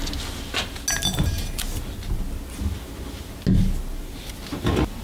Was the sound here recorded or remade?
recorded